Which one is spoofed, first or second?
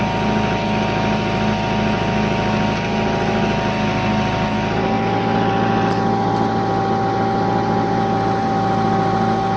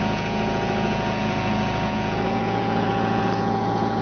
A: second